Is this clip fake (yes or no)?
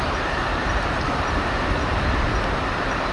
yes